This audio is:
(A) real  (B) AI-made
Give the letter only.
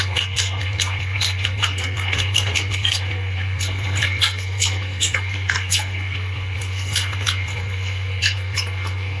B